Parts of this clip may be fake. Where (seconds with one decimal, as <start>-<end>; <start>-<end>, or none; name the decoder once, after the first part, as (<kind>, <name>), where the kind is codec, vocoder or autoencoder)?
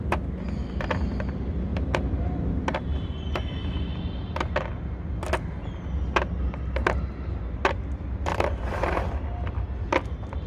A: 1.7-3.1 (vocoder, BigVGAN v2); 8.3-9.0